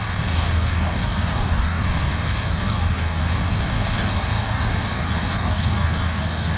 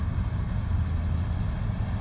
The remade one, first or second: first